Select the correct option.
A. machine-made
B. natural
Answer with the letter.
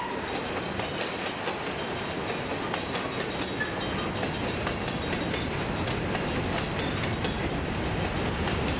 B